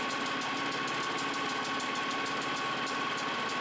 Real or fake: real